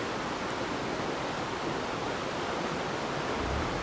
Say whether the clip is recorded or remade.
recorded